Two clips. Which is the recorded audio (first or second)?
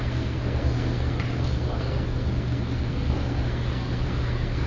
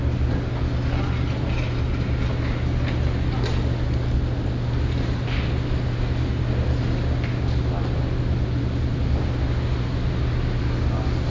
second